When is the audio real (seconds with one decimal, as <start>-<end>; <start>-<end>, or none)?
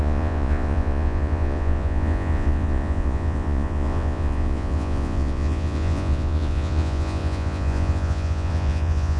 none